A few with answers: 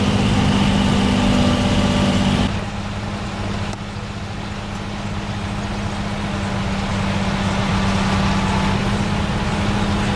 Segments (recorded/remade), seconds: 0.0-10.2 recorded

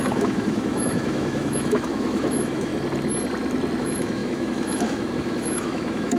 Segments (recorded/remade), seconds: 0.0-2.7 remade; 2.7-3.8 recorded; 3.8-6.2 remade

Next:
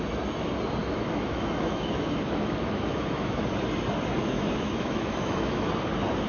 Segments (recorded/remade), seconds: 0.0-0.8 recorded; 0.8-3.4 remade; 3.4-4.2 recorded; 4.2-5.7 remade; 5.7-6.3 recorded

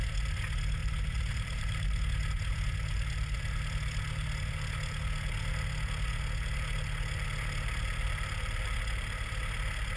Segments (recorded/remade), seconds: 0.0-0.8 recorded; 0.8-2.0 remade; 2.0-10.0 recorded

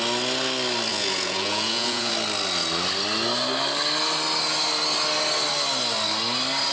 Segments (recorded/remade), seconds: 0.0-0.9 recorded; 0.9-2.1 remade; 2.1-6.7 recorded

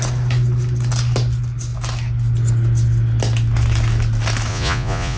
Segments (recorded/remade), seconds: 0.0-4.5 recorded; 4.5-5.2 remade